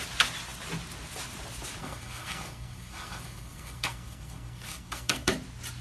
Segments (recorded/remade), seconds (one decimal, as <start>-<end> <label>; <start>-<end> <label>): 0.0-1.8 recorded; 1.8-5.3 remade; 5.3-5.8 recorded